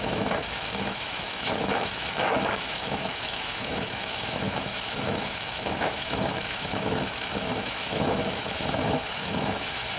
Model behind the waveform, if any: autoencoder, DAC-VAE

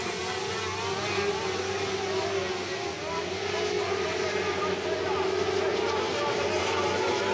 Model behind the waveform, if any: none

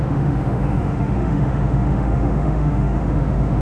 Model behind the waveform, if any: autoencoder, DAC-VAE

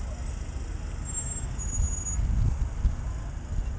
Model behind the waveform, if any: none